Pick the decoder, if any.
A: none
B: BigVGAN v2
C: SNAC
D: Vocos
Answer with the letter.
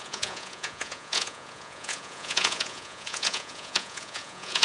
D